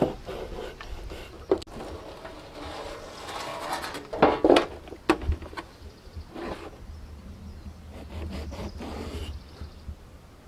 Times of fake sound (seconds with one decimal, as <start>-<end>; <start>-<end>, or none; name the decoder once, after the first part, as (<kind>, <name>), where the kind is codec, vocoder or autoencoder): none